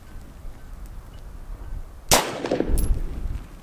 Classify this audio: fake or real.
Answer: real